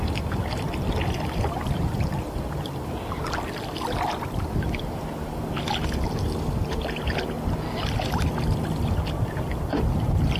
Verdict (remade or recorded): recorded